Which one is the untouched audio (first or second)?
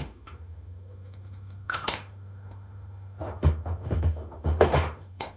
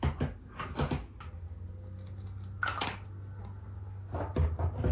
second